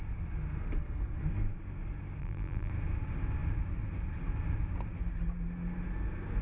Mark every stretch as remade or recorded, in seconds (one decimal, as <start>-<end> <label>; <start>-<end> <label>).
0.0-2.2 recorded; 2.2-2.7 remade; 2.7-6.4 recorded